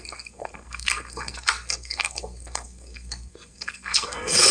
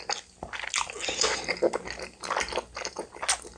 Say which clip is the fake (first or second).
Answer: first